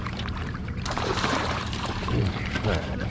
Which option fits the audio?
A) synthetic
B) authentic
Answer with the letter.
A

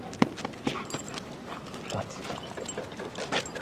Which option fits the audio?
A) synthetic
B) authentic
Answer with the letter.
B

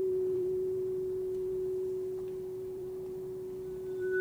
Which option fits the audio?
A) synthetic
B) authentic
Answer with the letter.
A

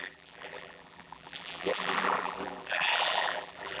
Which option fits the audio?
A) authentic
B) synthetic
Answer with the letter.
B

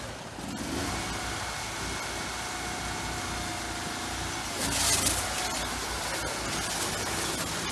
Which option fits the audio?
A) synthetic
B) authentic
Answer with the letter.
B